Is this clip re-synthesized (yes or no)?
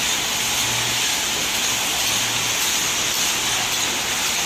no